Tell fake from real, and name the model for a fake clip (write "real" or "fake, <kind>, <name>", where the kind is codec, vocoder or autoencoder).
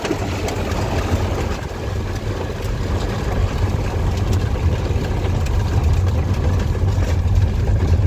real